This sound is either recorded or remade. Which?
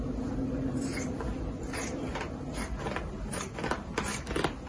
recorded